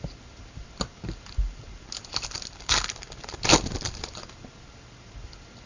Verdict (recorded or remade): recorded